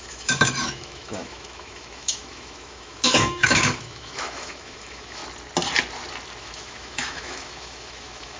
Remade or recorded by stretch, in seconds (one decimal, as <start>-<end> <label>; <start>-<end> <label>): 0.0-5.2 remade; 5.2-6.4 recorded; 6.4-8.4 remade